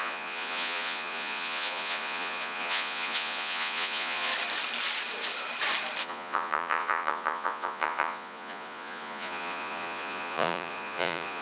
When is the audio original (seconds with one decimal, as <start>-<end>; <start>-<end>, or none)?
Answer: 4.3-6.0